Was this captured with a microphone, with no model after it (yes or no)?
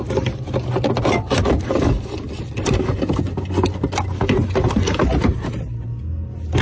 yes